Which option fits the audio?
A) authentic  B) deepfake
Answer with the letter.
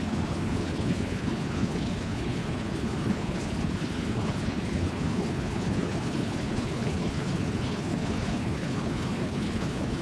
B